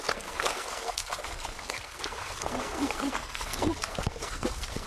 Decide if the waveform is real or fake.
fake